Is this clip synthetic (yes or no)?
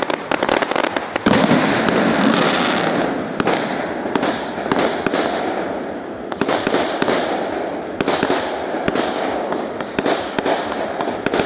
no